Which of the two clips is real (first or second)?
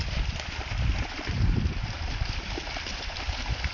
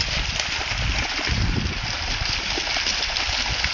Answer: second